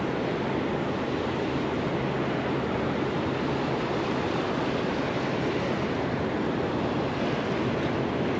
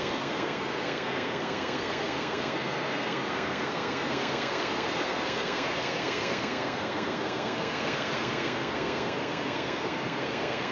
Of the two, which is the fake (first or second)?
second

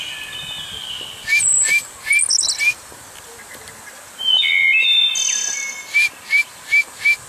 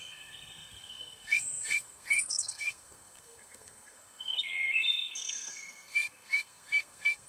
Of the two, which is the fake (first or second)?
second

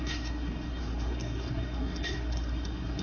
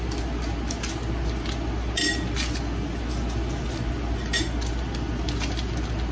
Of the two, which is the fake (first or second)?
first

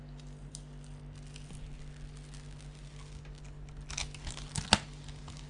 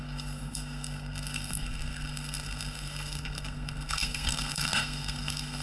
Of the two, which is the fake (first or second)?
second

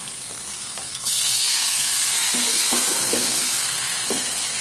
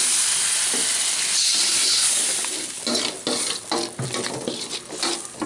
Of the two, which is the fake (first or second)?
first